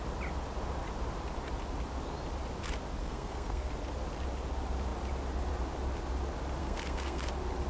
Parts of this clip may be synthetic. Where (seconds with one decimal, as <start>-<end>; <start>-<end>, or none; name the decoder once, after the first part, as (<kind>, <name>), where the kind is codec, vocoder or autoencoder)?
3.0-3.7 (codec, SNAC); 6.6-7.3